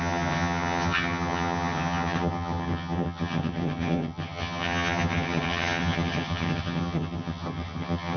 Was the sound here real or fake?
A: fake